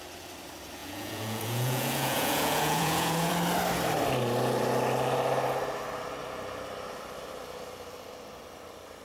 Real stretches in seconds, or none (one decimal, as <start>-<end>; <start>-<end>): 0.0-0.8; 3.3-9.0